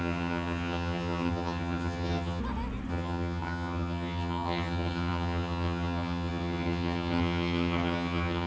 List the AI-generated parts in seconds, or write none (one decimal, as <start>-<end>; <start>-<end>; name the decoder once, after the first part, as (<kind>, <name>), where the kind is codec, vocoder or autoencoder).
0.0-2.4 (vocoder, HiFi-GAN); 2.9-8.5